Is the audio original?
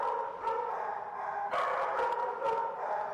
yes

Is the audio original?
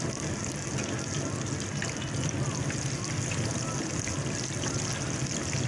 yes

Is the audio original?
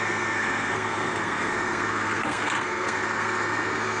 no